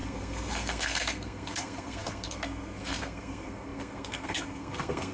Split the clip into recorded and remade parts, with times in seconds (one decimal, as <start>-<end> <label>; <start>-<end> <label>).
0.0-5.1 remade